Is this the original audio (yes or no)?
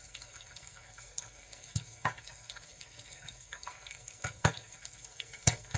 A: no